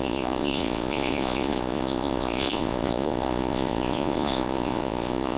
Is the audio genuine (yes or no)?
no